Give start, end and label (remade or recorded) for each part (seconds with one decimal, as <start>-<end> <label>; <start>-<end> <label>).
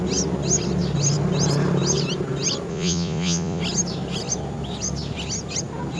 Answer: 0.0-2.7 recorded; 2.7-3.6 remade; 3.6-6.0 recorded